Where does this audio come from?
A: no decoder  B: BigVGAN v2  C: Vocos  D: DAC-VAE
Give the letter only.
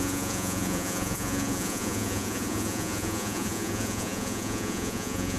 C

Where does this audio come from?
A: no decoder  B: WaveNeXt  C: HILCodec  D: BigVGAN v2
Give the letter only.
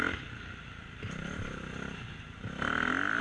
A